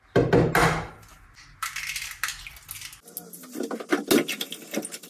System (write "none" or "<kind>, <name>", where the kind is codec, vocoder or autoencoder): none